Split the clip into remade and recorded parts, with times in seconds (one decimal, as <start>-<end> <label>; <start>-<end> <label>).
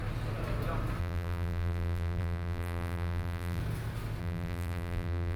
0.0-1.0 recorded; 1.0-3.6 remade; 3.6-4.2 recorded; 4.2-5.4 remade